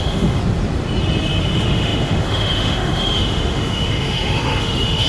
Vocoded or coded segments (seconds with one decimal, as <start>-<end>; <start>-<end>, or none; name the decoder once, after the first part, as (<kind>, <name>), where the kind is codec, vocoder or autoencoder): 0.0-0.4 (autoencoder, DAC-VAE); 1.4-5.1